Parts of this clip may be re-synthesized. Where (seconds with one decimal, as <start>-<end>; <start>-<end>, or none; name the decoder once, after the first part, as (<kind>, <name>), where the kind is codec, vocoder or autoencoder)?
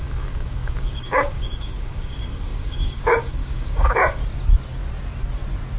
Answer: 0.0-4.2 (codec, DAC)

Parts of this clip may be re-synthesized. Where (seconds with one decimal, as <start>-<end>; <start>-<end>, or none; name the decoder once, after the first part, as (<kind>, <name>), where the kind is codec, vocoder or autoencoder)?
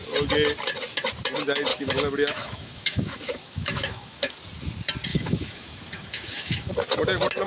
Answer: 1.7-4.3 (autoencoder, DAC-VAE); 5.1-6.7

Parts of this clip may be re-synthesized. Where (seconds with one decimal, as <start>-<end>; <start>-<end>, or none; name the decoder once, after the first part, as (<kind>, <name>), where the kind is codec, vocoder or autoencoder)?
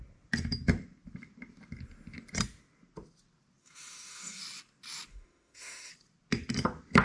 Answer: 3.6-4.4 (autoencoder, DAC-VAE); 5.1-5.9